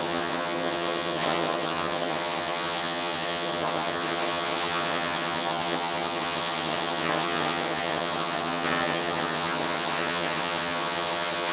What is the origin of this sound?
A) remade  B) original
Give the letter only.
A